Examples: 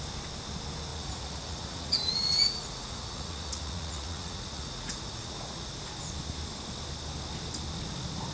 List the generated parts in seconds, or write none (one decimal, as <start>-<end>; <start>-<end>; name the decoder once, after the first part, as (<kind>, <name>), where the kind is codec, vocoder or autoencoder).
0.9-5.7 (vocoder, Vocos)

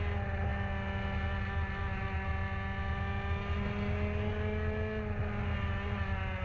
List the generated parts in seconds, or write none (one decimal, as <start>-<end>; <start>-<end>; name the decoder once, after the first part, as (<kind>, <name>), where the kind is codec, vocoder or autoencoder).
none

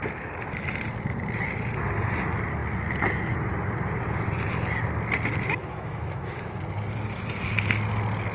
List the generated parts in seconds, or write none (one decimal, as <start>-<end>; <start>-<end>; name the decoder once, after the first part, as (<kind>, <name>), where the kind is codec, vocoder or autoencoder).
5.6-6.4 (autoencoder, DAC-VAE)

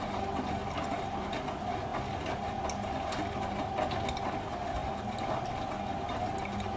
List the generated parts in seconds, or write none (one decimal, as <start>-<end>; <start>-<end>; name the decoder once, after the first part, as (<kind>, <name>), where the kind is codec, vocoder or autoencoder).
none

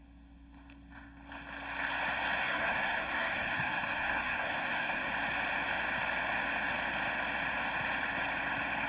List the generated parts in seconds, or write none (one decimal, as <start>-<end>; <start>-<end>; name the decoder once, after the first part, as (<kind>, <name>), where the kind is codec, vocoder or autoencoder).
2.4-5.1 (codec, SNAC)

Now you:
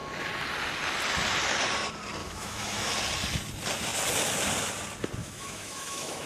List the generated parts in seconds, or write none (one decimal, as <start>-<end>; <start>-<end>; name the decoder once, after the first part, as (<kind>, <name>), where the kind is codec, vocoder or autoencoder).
2.2-2.9 (autoencoder, DAC-VAE); 5.2-6.3